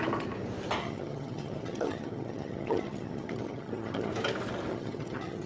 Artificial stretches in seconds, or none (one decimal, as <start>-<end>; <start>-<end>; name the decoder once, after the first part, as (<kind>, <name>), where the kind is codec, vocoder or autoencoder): 0.8-4.1 (vocoder, HiFi-GAN); 4.7-5.5